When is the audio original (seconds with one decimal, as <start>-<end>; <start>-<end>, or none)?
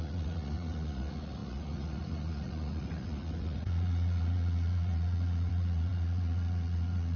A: none